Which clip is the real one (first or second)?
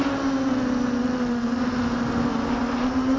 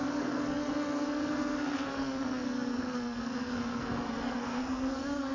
first